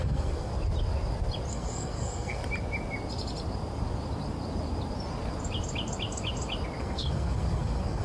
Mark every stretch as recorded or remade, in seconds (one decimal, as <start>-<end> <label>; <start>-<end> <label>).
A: 0.0-0.5 remade; 0.5-1.5 recorded; 1.5-2.4 remade; 2.4-6.8 recorded; 6.8-8.0 remade